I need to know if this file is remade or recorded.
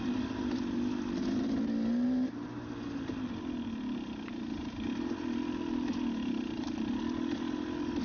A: recorded